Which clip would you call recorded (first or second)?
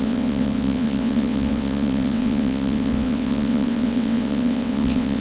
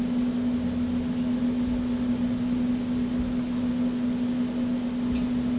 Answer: second